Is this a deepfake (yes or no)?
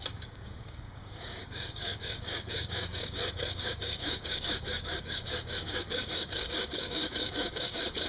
yes